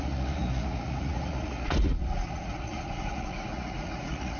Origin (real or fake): fake